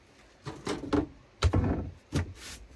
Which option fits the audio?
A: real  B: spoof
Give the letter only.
A